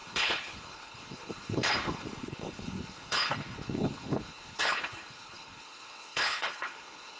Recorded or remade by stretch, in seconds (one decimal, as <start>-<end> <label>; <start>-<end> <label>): 0.0-7.2 remade